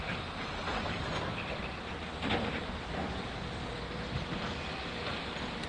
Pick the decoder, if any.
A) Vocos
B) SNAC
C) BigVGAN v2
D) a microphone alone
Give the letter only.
D